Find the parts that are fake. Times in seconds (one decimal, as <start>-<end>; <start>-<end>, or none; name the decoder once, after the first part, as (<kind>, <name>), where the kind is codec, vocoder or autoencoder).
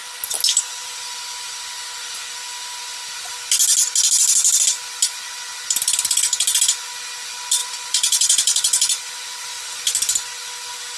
7.6-9.7 (vocoder, BigVGAN v2)